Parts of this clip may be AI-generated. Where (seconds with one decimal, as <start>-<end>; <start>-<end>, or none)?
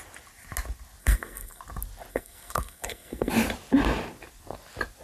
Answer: 1.0-1.6; 2.1-3.3